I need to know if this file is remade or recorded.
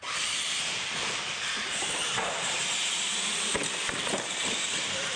remade